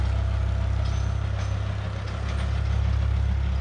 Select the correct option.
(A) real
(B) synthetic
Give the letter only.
A